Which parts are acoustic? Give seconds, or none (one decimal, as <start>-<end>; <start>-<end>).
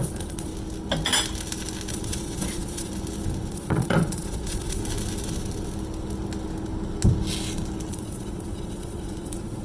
0.5-1.9; 2.9-3.5; 4.8-7.9